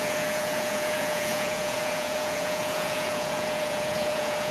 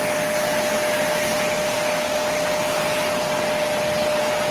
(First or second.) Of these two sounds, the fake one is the first